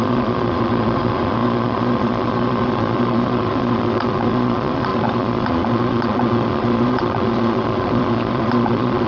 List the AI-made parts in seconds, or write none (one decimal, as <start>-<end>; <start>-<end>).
0.0-9.1